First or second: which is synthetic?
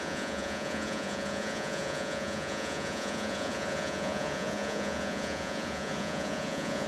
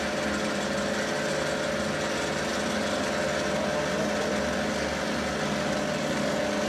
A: first